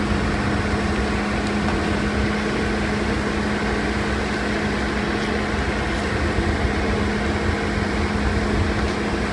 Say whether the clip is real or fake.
real